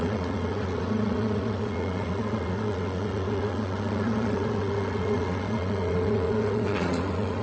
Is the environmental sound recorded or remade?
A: remade